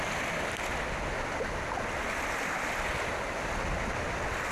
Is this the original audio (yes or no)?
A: yes